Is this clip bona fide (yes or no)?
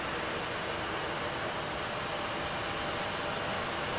yes